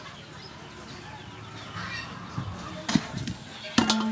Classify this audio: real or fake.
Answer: real